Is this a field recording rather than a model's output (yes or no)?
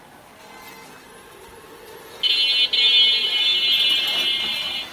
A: yes